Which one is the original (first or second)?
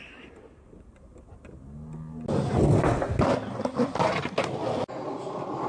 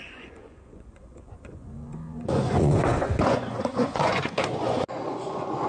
first